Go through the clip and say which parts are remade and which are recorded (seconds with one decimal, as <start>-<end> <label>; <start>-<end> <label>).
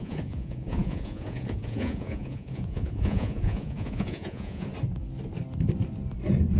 0.0-4.7 remade; 4.7-6.6 recorded